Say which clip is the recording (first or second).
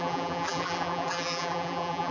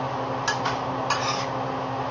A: second